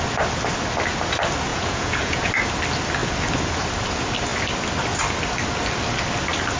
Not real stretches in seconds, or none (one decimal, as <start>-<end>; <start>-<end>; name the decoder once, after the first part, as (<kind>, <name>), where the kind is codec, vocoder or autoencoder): 1.5-2.3 (vocoder, Vocos)